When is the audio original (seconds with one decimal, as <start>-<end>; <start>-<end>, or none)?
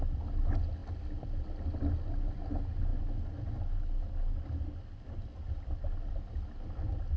0.0-7.2